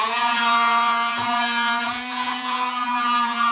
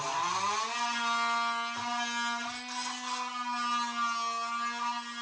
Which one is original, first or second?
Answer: second